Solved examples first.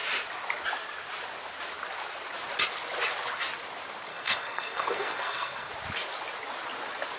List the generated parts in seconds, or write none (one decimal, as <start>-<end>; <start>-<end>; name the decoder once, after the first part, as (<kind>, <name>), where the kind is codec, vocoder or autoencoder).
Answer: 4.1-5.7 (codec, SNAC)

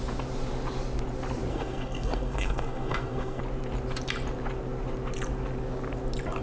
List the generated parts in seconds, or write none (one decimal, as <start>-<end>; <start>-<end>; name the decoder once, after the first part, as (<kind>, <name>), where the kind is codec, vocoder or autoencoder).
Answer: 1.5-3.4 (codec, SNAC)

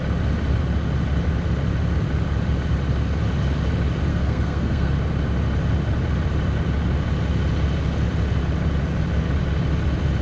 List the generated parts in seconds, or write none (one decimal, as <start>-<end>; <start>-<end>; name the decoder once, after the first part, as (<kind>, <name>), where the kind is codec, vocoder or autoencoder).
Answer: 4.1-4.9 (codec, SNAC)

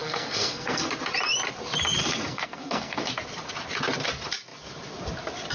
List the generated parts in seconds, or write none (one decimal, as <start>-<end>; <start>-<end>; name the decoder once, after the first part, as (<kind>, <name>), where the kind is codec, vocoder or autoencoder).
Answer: 0.0-0.9 (codec, SNAC); 2.0-3.1

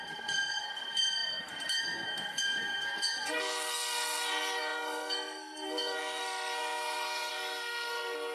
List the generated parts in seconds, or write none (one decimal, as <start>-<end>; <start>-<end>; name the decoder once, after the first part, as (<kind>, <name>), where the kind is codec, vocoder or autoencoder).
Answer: 0.0-8.3 (codec, SNAC)